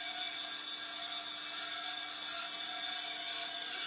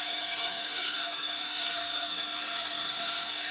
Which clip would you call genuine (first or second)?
first